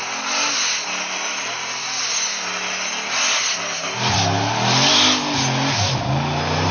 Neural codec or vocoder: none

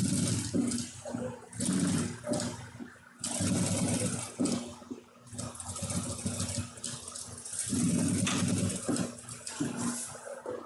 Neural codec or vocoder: none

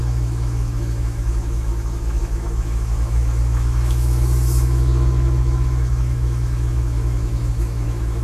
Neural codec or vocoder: autoencoder, DAC-VAE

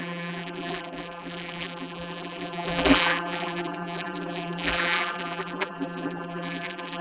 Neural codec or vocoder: vocoder, BigVGAN v2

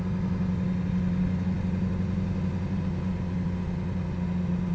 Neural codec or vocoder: none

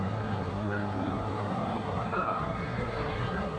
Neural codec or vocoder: codec, SNAC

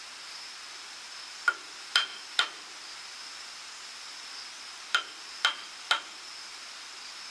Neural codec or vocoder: none